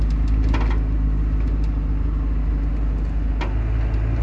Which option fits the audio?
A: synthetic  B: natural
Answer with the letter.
B